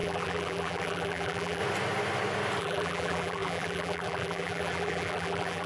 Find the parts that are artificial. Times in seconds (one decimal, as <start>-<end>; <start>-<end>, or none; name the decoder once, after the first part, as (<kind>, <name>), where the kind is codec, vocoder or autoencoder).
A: 0.0-1.6 (vocoder, BigVGAN v2); 2.6-5.7